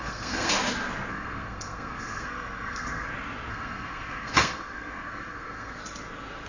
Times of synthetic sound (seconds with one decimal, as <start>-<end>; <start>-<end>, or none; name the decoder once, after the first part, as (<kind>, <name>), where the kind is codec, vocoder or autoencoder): 0.0-0.5 (codec, SNAC); 1.1-3.1; 3.5-5.8